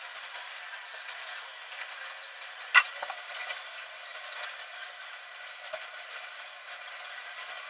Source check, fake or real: real